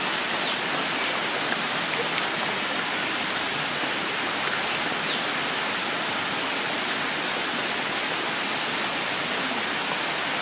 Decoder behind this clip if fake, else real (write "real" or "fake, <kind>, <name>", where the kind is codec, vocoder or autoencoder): real